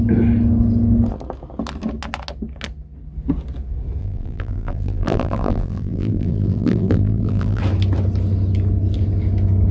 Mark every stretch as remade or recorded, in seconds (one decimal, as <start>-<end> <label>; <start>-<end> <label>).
0.0-4.0 recorded; 4.0-7.6 remade; 7.6-9.7 recorded